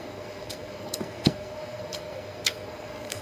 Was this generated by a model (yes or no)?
yes